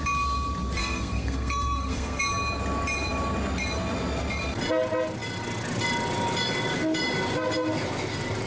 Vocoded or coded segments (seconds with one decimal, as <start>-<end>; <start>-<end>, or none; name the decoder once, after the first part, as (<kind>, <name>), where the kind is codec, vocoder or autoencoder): 0.8-2.2 (codec, SNAC)